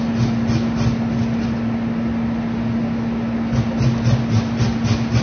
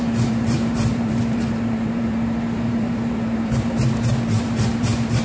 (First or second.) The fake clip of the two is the second